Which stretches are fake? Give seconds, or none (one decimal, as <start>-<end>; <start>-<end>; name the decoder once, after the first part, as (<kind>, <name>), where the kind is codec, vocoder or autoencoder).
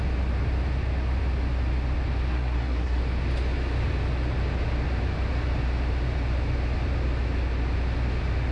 2.3-3.0 (codec, SNAC)